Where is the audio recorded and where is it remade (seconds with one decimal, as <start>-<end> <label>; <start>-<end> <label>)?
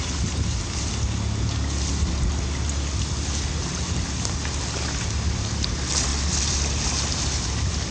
0.0-7.9 recorded